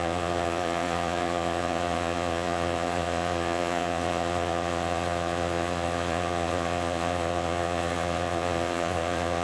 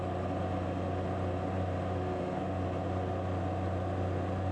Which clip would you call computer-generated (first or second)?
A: first